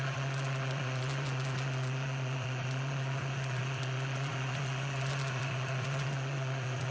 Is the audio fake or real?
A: fake